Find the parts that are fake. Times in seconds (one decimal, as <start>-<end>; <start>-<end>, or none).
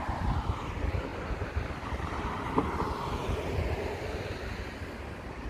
3.2-3.9